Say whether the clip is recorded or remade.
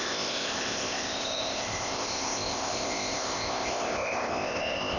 remade